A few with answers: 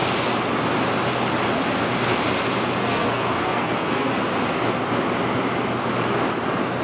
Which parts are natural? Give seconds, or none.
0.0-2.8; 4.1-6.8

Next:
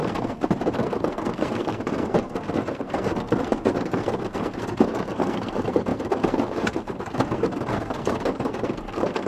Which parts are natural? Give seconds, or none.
none

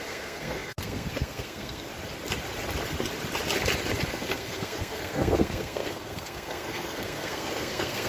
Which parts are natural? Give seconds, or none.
1.9-4.1

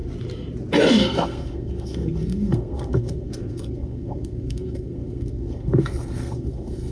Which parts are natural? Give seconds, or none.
0.0-0.9

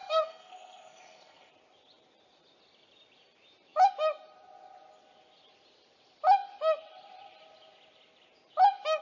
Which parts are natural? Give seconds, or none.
1.5-9.0

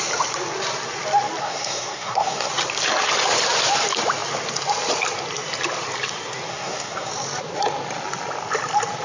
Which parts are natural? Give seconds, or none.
0.0-1.4; 2.5-6.5; 7.1-9.0